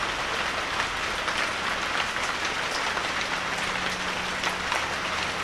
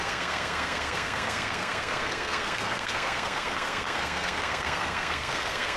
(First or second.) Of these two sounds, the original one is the first